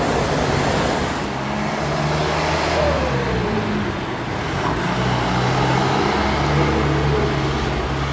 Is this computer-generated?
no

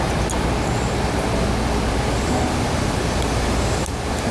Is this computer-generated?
no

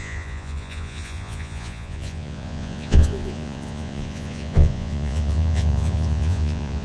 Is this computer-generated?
yes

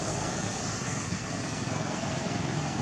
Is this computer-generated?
yes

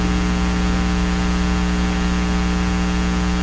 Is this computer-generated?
no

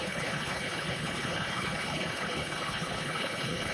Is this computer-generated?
yes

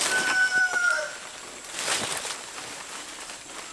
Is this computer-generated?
yes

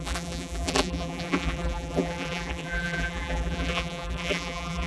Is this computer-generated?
yes